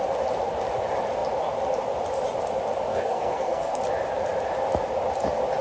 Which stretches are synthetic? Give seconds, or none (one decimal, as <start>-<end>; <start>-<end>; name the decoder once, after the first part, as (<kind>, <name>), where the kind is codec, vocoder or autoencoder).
2.9-3.8 (codec, SNAC)